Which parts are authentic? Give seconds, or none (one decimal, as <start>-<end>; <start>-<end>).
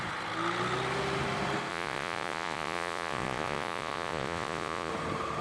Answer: 0.0-1.7; 4.9-5.4